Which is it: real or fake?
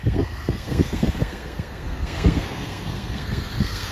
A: fake